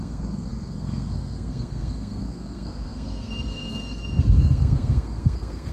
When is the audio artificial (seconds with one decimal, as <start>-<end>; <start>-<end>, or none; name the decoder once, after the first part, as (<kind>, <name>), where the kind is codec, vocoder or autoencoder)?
0.0-5.7 (codec, SNAC)